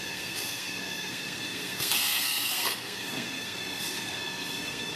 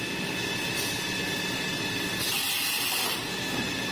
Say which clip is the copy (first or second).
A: first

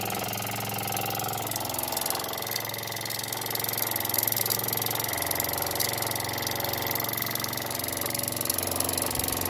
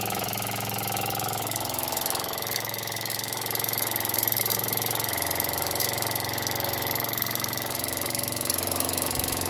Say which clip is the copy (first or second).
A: second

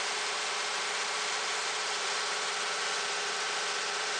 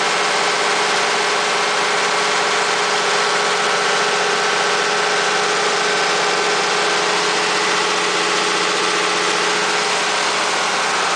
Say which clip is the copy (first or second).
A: first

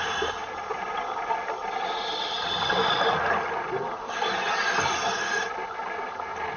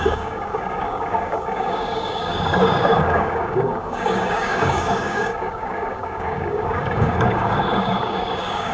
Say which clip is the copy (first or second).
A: second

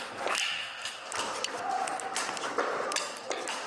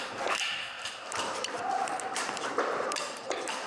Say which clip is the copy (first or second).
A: second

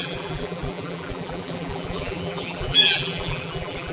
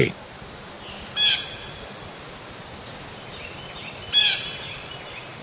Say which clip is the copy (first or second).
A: first